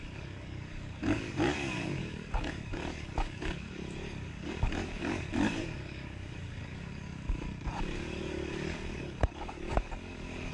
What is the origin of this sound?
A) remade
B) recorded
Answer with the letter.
A